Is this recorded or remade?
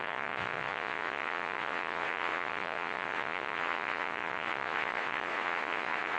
remade